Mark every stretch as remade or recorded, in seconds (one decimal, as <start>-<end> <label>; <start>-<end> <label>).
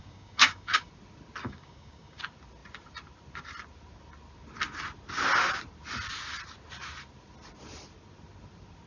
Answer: 0.0-0.9 remade; 0.9-1.4 recorded; 1.4-2.2 remade; 2.2-8.9 recorded